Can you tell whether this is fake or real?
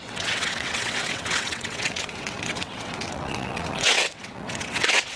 fake